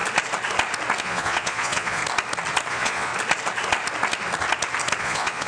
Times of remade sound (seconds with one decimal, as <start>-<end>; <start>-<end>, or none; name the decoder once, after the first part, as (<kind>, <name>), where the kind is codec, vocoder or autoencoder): 1.0-2.0 (vocoder, Vocos); 2.7-3.1; 5.0-5.5